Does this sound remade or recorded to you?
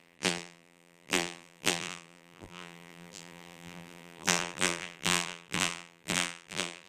remade